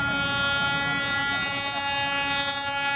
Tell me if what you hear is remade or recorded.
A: recorded